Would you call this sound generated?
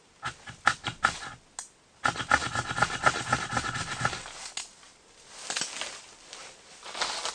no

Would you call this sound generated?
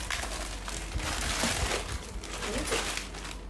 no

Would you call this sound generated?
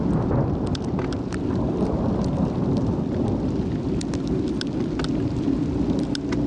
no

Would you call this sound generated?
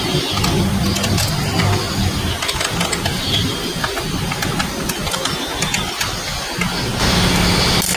no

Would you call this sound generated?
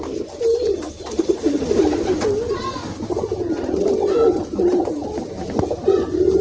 no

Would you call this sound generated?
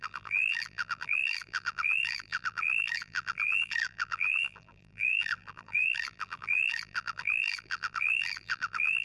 yes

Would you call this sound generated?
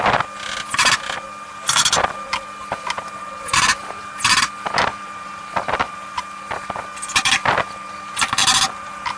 no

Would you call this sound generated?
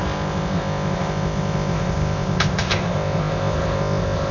yes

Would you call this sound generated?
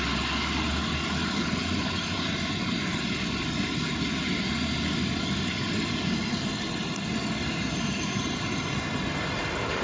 no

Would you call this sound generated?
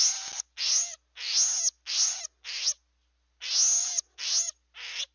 no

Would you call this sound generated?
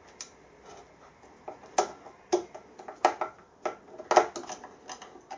no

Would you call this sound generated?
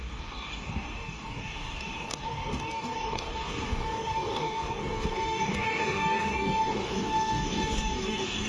yes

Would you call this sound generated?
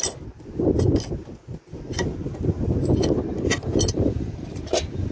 no